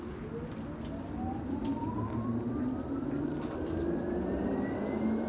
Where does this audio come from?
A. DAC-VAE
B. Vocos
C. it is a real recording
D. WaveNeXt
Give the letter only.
C